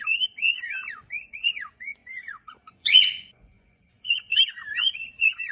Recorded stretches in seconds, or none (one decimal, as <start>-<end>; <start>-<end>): none